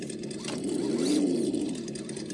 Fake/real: real